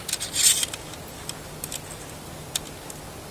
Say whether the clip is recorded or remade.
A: recorded